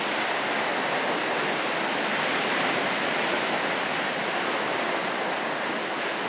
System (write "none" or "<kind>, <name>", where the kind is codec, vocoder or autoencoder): none